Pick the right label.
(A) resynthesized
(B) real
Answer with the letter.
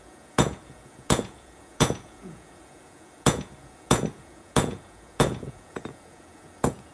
A